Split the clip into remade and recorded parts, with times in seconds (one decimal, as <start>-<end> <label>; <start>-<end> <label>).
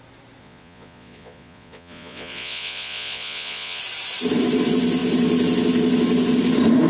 0.0-0.4 recorded; 0.4-3.8 remade; 3.8-6.9 recorded